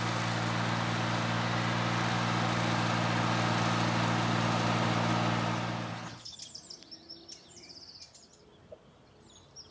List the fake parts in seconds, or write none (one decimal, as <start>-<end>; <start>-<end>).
5.9-6.4